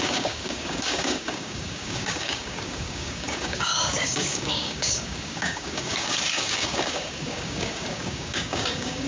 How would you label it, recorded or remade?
remade